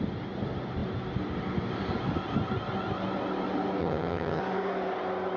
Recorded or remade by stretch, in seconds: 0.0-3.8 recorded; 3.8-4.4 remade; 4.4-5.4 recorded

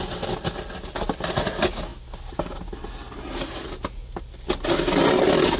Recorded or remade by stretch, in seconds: 0.0-5.6 recorded

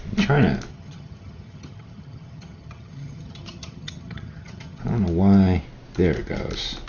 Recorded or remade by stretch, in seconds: 0.0-0.7 recorded; 0.7-4.8 remade; 4.8-6.9 recorded

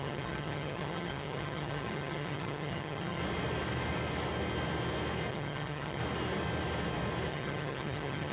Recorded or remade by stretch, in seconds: 0.0-3.2 remade; 3.2-5.3 recorded; 5.3-6.0 remade; 6.0-7.3 recorded; 7.3-8.3 remade

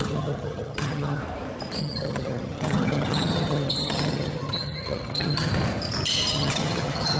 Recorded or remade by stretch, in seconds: 0.0-1.2 remade; 1.2-1.8 recorded; 1.8-5.5 remade; 5.5-6.3 recorded; 6.3-7.2 remade